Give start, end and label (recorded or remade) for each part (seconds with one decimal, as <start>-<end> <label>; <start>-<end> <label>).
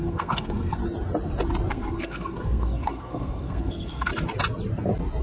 0.0-0.8 remade; 0.8-1.7 recorded; 1.7-4.1 remade; 4.1-5.2 recorded